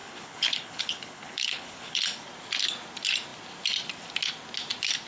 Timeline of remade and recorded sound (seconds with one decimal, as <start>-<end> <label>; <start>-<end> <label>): 0.0-2.0 remade; 2.0-5.1 recorded